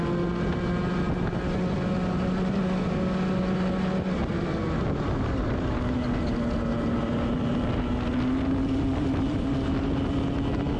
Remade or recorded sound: recorded